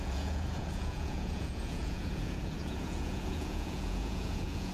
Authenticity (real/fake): fake